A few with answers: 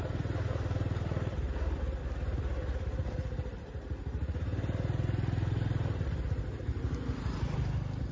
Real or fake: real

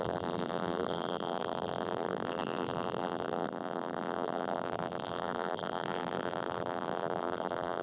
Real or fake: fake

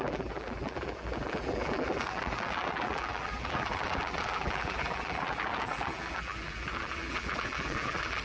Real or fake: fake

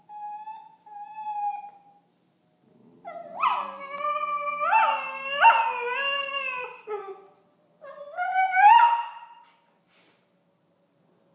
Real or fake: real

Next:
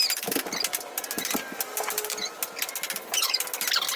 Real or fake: real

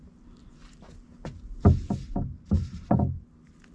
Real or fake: real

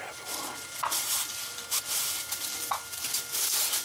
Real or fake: real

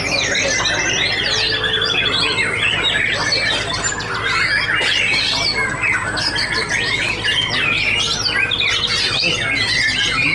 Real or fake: real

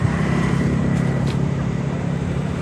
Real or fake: fake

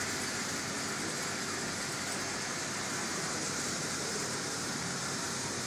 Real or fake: fake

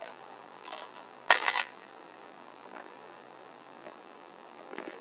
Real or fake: fake